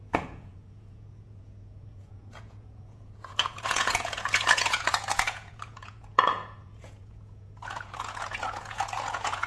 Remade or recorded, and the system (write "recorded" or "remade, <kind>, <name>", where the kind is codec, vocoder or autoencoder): remade, vocoder, Vocos